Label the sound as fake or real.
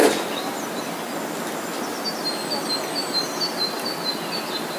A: real